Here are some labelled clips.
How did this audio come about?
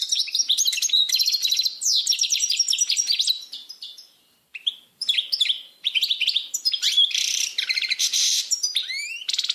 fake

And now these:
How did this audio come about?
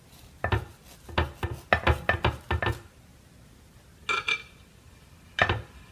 real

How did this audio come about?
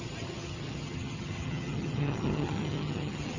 fake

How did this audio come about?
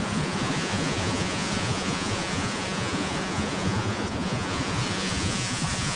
fake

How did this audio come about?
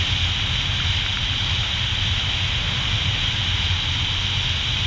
real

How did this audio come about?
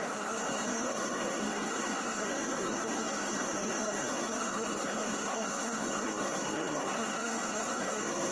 fake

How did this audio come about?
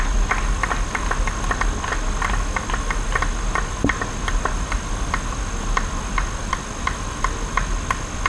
real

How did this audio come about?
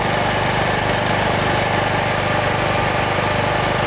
real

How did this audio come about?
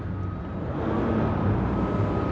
real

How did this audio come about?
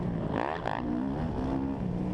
real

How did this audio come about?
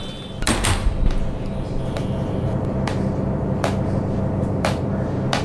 fake